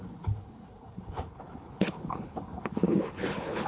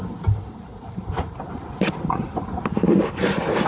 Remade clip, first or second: first